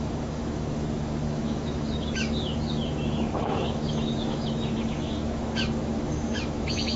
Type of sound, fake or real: fake